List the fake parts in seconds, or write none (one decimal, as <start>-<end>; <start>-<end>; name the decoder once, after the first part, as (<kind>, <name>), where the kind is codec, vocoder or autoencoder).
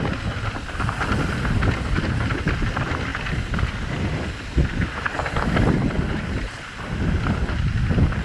none